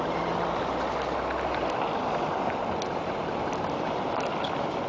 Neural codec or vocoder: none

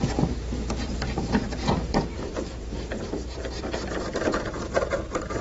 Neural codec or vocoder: vocoder, BigVGAN v2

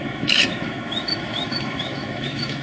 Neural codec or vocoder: autoencoder, DAC-VAE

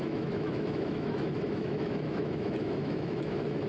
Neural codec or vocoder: autoencoder, DAC-VAE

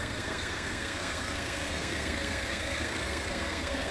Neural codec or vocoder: codec, SNAC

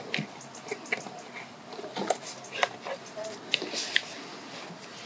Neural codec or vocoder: none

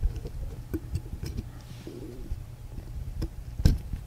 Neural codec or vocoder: vocoder, BigVGAN v2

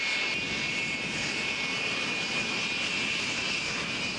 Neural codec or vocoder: none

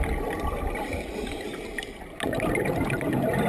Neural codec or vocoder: vocoder, BigVGAN v2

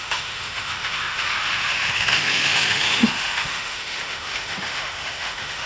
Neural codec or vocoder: autoencoder, DAC-VAE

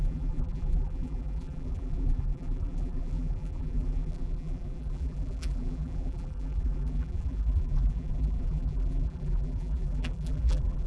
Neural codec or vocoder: vocoder, BigVGAN v2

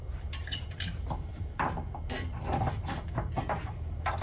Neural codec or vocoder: vocoder, BigVGAN v2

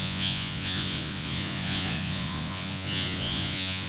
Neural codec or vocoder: vocoder, Vocos